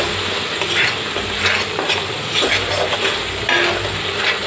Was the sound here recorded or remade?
recorded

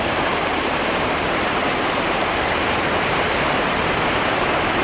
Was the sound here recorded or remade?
remade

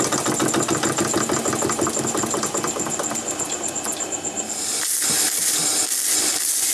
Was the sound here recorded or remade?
recorded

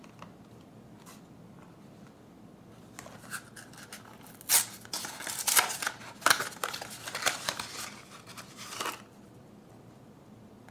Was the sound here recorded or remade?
recorded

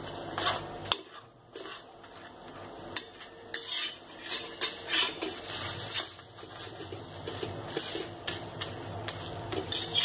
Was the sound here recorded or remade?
recorded